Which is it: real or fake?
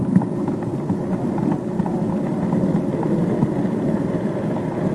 fake